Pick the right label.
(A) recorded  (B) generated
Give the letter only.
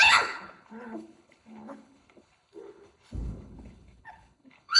B